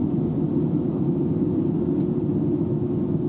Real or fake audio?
real